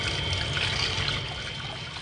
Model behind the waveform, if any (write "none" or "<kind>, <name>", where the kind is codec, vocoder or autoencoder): none